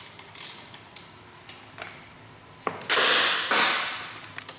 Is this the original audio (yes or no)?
yes